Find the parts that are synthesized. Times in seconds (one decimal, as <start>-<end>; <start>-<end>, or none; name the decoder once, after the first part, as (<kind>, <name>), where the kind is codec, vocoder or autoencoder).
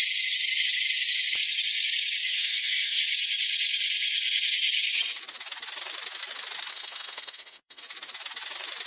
2.2-3.0 (codec, SNAC); 6.7-7.8